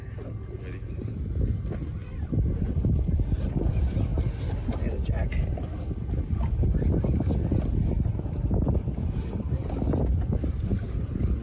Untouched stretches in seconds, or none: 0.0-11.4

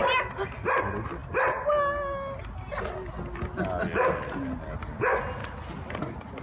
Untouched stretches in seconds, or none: 0.0-6.4